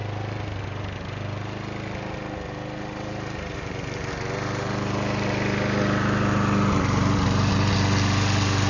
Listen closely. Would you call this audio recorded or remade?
recorded